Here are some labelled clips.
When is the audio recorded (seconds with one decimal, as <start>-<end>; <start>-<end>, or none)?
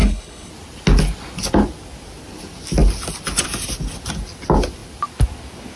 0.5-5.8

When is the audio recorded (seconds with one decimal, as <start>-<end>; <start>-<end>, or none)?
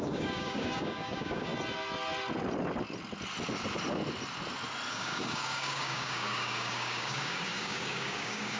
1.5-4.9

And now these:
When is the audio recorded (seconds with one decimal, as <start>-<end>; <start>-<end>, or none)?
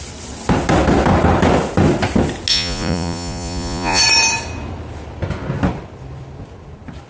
0.0-2.5; 4.0-7.1